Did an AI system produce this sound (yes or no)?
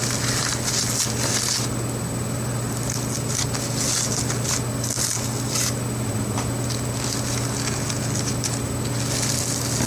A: no